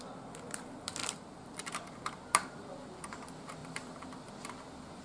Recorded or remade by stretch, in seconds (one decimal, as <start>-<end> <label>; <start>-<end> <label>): 0.0-1.0 recorded; 1.0-1.7 remade; 1.7-3.6 recorded; 3.6-4.3 remade; 4.3-5.0 recorded